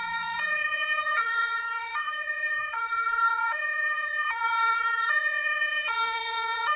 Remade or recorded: remade